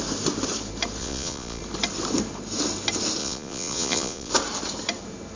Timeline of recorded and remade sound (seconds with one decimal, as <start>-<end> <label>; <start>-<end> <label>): 0.0-1.0 recorded; 1.0-1.6 remade; 1.6-3.2 recorded; 3.2-4.3 remade; 4.3-5.4 recorded